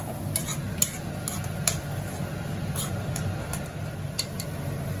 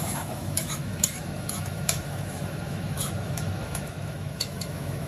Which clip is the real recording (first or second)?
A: first